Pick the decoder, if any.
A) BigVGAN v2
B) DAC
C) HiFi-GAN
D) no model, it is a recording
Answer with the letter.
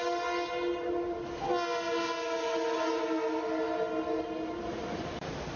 D